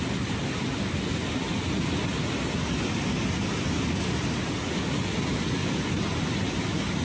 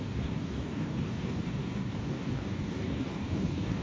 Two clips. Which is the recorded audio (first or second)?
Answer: first